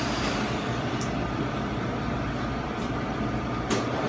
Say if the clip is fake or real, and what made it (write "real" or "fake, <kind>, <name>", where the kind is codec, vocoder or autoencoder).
fake, vocoder, BigVGAN v2